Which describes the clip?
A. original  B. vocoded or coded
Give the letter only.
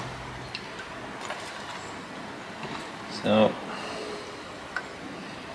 A